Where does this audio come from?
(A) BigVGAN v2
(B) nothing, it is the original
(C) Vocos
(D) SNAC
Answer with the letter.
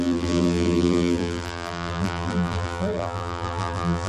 A